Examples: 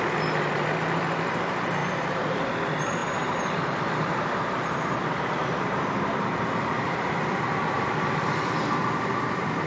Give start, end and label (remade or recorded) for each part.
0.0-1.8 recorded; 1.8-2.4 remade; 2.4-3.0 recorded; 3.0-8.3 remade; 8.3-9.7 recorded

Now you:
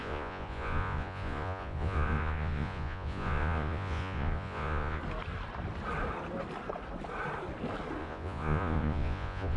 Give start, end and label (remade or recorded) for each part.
0.0-5.0 remade; 5.0-8.0 recorded; 8.0-9.6 remade

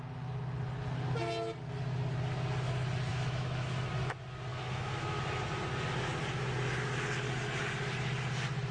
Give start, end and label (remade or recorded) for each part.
0.0-3.1 recorded; 3.1-3.9 remade; 3.9-4.5 recorded; 4.5-5.2 remade; 5.2-8.7 recorded

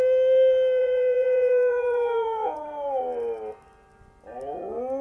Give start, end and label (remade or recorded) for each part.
0.0-0.8 recorded; 0.8-3.0 remade; 3.0-5.0 recorded

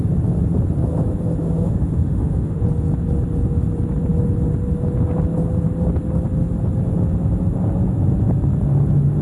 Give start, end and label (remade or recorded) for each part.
0.0-1.4 recorded; 1.4-2.6 remade; 2.6-9.2 recorded

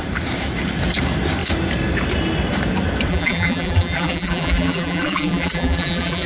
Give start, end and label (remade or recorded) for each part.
0.0-3.1 recorded; 3.1-6.3 remade